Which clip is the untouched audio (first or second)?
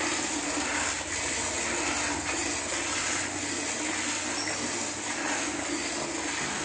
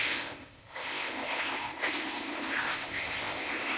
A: first